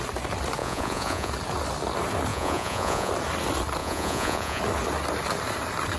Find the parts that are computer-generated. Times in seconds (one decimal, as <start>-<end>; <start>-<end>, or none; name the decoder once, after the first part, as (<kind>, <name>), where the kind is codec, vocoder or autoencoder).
0.6-1.3 (vocoder, Vocos); 2.3-3.1; 3.8-4.6